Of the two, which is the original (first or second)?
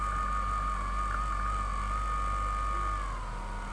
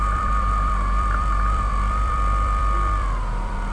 first